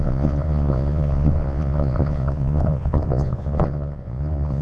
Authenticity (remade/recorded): remade